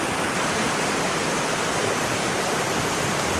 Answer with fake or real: real